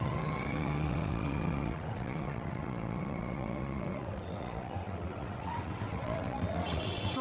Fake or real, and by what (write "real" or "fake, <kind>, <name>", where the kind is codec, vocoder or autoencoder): fake, vocoder, WaveNeXt